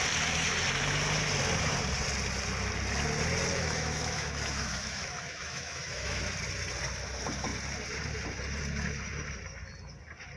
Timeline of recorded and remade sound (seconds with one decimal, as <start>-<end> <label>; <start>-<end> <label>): 0.0-3.5 recorded; 3.5-6.2 remade; 6.2-10.4 recorded